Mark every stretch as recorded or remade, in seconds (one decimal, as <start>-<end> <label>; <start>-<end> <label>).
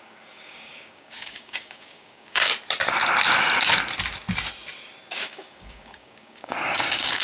0.0-2.5 remade; 2.5-5.1 recorded; 5.1-7.2 remade